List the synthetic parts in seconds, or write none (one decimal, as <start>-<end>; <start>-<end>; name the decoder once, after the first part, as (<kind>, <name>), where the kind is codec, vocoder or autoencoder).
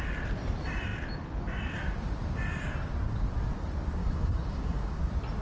4.0-5.0 (codec, DAC)